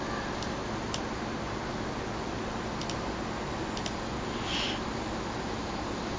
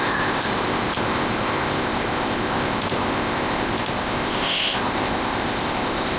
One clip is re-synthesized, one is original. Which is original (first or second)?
first